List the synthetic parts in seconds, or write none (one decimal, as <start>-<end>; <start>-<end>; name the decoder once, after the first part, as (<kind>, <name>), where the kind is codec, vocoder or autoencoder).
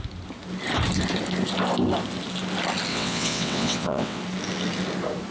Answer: 2.9-4.2 (vocoder, WaveNeXt)